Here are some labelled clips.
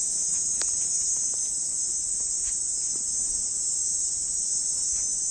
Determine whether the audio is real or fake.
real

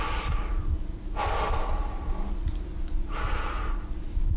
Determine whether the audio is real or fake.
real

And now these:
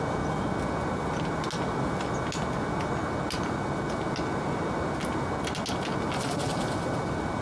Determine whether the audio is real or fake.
real